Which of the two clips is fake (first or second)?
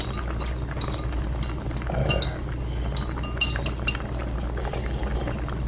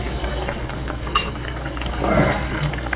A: second